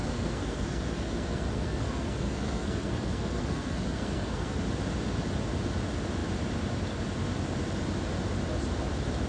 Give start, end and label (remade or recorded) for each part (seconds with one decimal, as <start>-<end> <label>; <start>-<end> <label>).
0.0-4.6 remade; 4.6-9.3 recorded